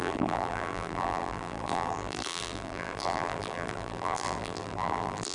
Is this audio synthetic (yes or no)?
yes